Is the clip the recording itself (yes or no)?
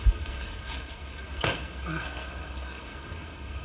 no